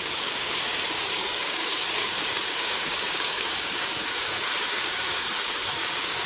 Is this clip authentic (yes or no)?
no